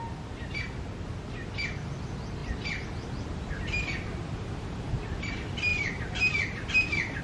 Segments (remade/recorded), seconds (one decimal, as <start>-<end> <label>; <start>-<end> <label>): 0.0-5.7 recorded; 5.7-7.2 remade